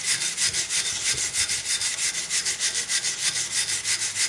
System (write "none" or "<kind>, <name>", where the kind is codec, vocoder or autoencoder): none